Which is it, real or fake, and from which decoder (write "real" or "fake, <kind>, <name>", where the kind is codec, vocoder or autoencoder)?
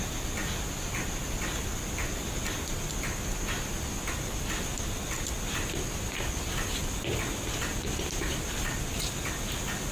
real